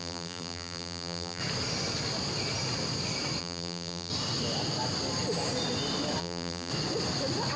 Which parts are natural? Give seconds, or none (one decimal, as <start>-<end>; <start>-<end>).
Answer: 1.4-3.4; 4.1-6.2; 6.7-7.6